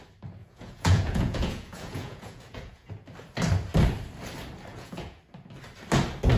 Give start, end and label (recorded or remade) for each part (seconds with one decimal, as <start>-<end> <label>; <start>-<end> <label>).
0.0-0.4 recorded; 0.4-2.9 remade; 2.9-4.7 recorded; 4.7-5.2 remade; 5.2-6.4 recorded